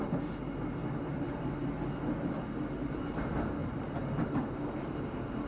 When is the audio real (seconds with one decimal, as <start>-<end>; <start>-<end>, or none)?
0.0-3.6; 4.3-5.5